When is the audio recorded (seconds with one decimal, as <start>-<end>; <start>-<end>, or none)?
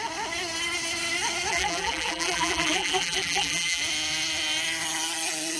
0.0-1.5; 3.8-5.6